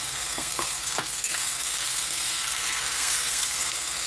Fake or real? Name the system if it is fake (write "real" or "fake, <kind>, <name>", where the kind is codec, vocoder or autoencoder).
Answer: fake, codec, SNAC